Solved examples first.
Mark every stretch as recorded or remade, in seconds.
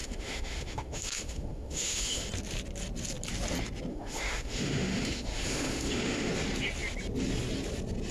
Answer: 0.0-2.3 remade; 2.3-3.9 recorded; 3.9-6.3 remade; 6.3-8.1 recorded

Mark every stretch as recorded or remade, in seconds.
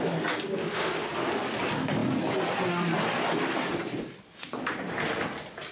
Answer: 0.0-0.6 recorded; 0.6-1.1 remade; 1.1-5.7 recorded